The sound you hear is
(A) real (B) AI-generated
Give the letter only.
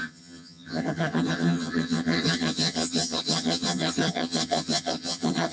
B